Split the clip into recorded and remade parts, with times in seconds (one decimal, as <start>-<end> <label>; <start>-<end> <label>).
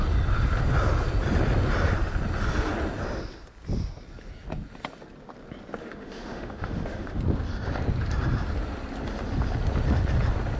0.0-5.8 recorded; 5.8-7.2 remade; 7.2-10.6 recorded